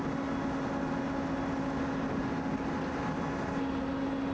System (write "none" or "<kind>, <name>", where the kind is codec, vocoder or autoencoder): none